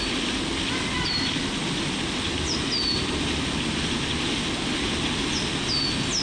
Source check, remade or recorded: recorded